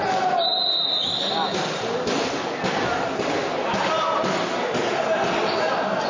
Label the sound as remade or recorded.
recorded